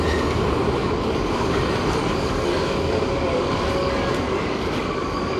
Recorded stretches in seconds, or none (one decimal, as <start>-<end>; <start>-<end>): 0.0-0.8; 1.6-2.0

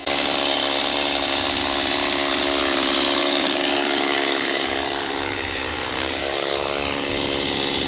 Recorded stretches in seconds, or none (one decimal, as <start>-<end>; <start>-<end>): 0.0-3.2; 7.1-7.9

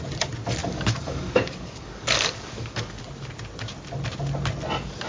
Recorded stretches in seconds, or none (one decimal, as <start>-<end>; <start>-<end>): 0.0-0.6; 3.0-5.1

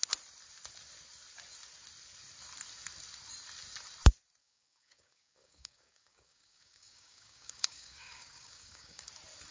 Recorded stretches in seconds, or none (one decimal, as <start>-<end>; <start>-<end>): 0.0-4.4; 9.1-9.5

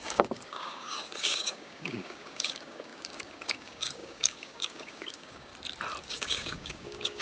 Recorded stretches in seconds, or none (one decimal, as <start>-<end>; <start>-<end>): 5.5-6.0

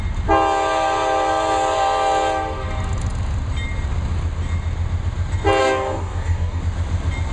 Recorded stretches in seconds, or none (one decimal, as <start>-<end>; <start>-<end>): 0.0-5.6; 6.6-7.3

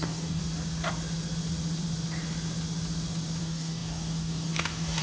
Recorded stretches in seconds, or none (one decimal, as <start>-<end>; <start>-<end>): 0.4-3.4